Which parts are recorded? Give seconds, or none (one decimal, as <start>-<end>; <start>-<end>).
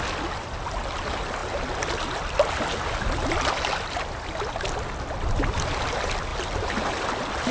0.0-7.5